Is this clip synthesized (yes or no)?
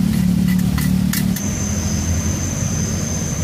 no